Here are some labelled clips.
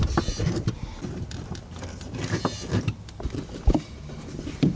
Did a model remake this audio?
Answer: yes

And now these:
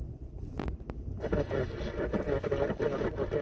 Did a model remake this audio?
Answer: no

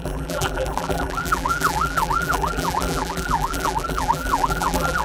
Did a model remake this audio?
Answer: yes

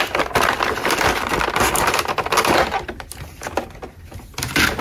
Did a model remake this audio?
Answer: no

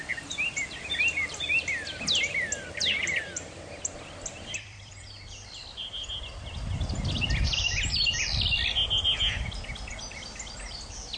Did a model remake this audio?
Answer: yes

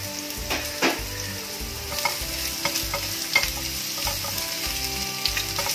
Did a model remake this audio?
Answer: no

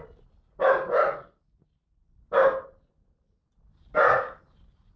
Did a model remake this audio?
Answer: no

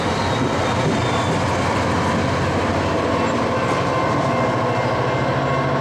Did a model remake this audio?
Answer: no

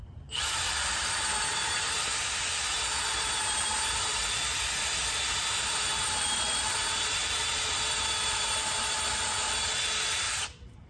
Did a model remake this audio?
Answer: yes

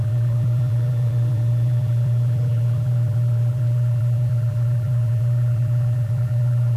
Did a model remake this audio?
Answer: yes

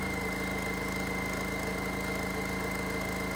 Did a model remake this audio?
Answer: no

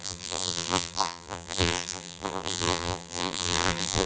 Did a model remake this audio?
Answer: yes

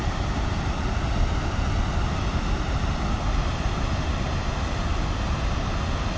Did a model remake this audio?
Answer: no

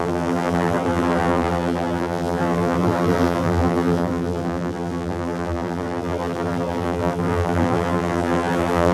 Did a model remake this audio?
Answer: yes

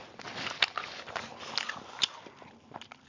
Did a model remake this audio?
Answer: no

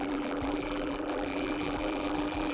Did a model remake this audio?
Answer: yes